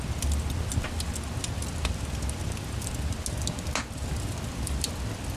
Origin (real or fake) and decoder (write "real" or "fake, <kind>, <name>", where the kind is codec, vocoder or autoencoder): real